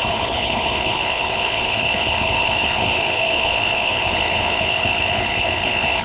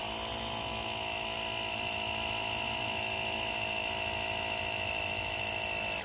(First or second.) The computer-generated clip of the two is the first